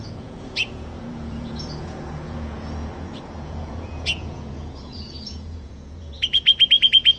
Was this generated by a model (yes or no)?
yes